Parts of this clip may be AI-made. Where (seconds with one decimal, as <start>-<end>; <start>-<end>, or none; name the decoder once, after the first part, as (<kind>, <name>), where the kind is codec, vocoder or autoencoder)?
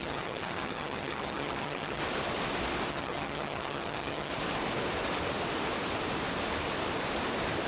0.0-2.0 (vocoder, HiFi-GAN); 2.9-4.3